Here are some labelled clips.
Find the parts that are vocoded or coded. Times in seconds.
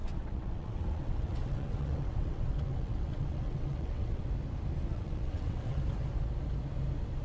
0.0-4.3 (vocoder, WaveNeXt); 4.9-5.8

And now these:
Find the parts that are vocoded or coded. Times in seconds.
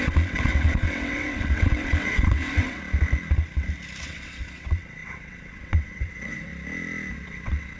0.0-2.8 (vocoder, WaveNeXt); 4.0-6.5; 7.1-7.8